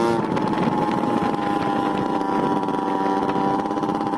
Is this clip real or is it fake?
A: real